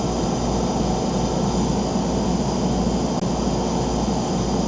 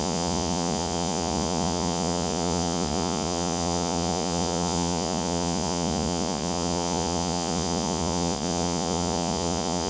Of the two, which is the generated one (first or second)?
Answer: second